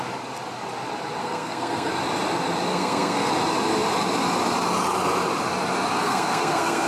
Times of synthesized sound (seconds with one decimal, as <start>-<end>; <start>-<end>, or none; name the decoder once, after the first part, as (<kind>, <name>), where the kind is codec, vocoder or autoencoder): 1.2-1.9 (codec, SNAC); 2.7-3.3; 6.0-6.9